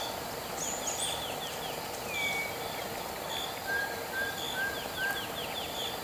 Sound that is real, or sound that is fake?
real